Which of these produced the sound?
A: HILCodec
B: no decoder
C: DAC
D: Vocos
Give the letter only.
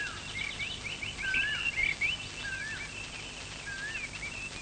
B